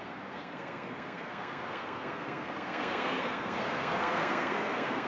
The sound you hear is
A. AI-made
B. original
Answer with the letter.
A